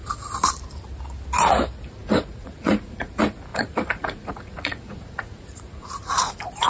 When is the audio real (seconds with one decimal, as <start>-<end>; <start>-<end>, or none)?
0.0-2.0; 3.1-3.5; 6.3-6.7